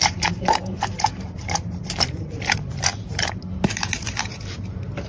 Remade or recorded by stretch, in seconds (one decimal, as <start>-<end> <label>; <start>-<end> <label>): 0.0-5.1 remade